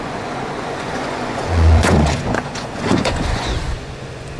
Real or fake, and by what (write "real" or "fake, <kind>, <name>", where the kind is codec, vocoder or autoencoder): fake, vocoder, Vocos